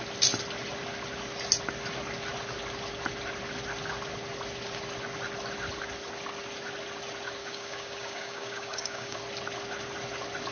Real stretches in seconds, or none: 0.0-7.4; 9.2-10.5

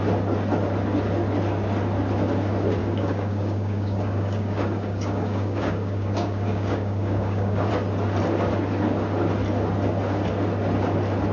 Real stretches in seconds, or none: 0.0-2.8; 7.7-11.3